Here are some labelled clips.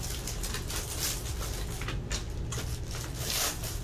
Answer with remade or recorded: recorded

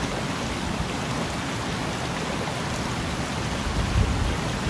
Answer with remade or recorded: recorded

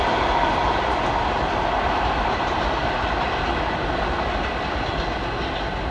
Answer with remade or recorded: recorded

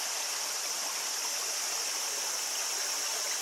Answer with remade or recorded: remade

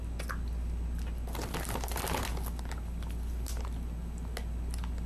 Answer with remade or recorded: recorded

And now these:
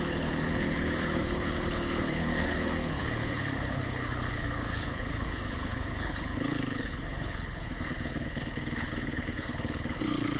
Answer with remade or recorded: remade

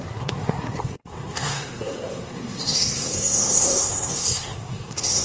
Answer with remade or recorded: remade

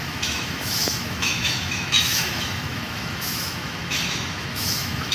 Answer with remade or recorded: remade